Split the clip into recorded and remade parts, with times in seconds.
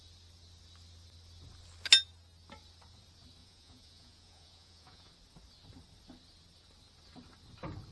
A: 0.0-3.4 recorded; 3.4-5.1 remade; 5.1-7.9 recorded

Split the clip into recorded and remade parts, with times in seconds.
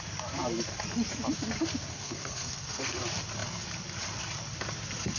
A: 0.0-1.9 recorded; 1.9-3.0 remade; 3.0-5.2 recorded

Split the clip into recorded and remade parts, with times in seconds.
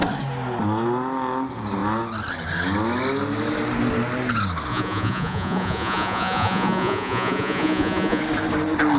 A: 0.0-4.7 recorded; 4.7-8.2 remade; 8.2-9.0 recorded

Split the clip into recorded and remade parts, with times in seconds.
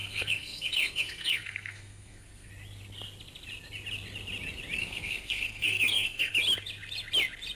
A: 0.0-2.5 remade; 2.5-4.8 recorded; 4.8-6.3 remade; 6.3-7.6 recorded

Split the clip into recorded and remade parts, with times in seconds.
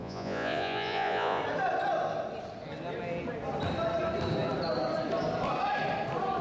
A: 0.0-1.4 remade; 1.4-6.4 recorded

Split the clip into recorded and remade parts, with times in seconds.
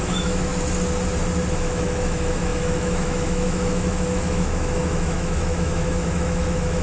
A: 0.0-0.5 remade; 0.5-1.5 recorded; 1.5-6.8 remade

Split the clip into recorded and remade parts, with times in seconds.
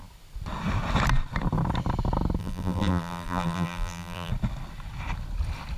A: 0.0-2.4 recorded; 2.4-4.3 remade; 4.3-5.8 recorded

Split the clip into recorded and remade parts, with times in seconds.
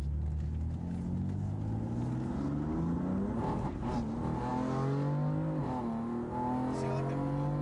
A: 0.0-7.6 recorded